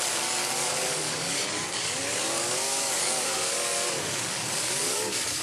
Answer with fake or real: fake